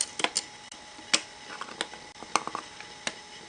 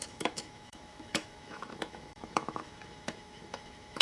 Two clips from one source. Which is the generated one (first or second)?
second